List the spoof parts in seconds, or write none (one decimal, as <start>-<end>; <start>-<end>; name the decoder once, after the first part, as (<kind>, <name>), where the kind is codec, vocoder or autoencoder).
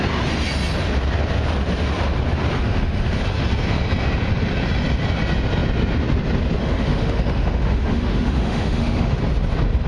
2.6-3.2 (autoencoder, DAC-VAE); 6.6-9.2